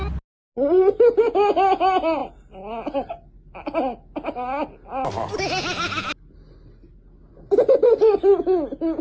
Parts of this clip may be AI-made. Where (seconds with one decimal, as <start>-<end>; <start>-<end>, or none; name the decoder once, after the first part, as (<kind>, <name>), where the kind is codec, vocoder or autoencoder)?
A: none